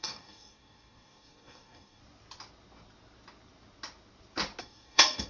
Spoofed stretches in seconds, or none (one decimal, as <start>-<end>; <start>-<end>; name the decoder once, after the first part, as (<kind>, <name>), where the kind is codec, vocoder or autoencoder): 0.0-2.0 (codec, DAC); 4.6-5.3